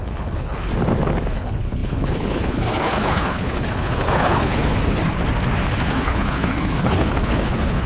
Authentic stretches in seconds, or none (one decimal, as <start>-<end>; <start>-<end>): 0.7-1.3; 5.2-5.9